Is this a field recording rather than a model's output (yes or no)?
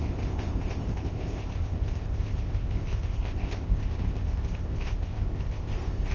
no